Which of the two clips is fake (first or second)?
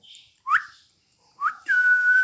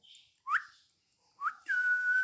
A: first